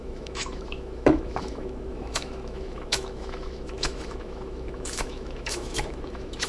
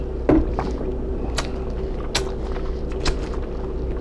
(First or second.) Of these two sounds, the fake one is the first